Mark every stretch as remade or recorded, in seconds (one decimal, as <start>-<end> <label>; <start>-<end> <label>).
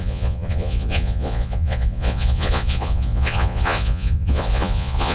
0.0-5.1 remade